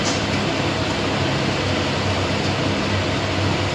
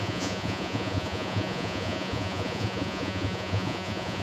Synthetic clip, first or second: second